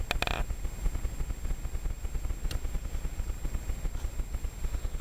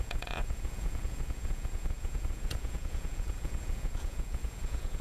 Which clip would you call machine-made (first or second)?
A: second